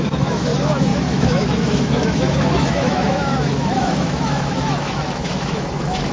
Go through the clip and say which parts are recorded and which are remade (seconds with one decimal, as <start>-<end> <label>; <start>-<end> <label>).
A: 0.0-6.1 remade